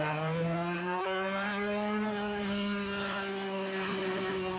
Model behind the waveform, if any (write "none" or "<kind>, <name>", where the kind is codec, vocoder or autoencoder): codec, SNAC